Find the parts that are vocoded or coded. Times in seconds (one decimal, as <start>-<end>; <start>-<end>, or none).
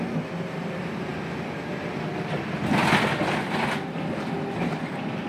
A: none